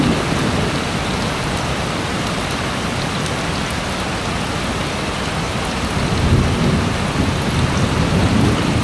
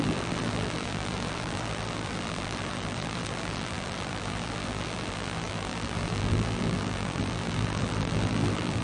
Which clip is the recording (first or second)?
first